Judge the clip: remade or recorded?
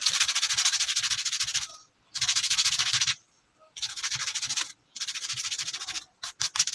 recorded